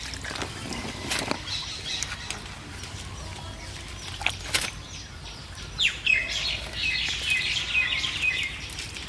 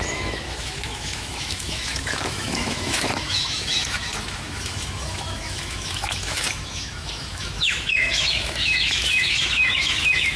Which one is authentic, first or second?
first